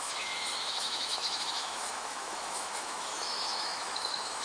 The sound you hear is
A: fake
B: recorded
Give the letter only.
A